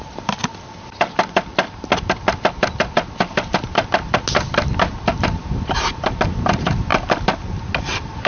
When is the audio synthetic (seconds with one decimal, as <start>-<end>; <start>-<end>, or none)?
0.0-0.4; 5.2-6.9; 7.8-8.3

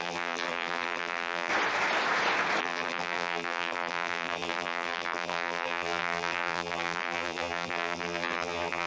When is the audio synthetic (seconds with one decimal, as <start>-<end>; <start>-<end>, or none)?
0.0-1.5; 2.6-8.9

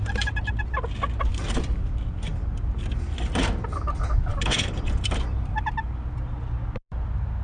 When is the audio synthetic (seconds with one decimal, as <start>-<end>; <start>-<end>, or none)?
1.3-1.9; 4.3-5.7

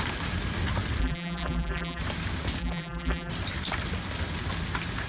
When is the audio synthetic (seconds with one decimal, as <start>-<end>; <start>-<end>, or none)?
1.0-2.0; 2.6-3.3

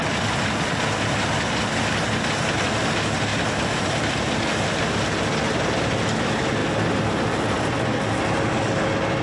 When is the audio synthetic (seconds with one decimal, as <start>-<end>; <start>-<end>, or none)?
3.3-4.8

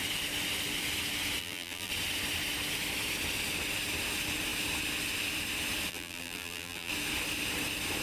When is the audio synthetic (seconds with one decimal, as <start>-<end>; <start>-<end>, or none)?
1.4-1.9; 5.9-6.9

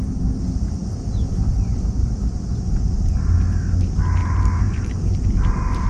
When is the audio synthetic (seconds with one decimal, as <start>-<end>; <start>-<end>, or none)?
4.2-5.9